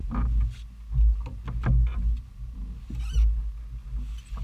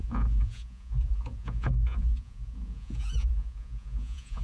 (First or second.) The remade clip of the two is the second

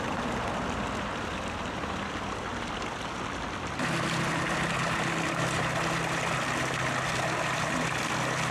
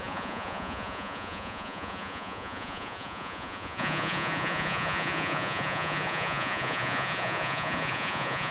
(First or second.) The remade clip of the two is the second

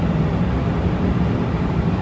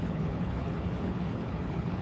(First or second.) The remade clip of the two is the second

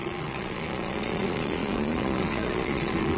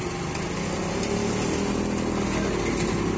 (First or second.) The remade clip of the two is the first